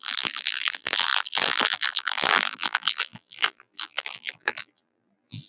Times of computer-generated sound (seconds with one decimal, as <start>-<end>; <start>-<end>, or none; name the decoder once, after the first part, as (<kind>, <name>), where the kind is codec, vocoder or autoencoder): 0.0-5.5 (vocoder, BigVGAN v2)